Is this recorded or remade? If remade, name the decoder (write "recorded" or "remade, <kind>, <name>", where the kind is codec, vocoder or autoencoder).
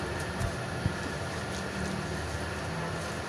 remade, vocoder, BigVGAN v2